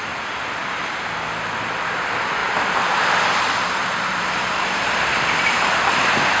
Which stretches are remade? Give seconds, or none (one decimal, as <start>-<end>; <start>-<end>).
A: 2.4-6.4